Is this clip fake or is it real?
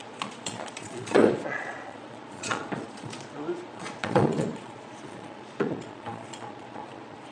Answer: fake